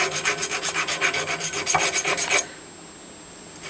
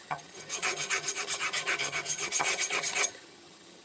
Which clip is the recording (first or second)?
first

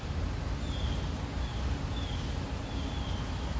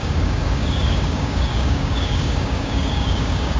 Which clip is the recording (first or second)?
first